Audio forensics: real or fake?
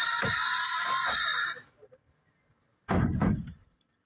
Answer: real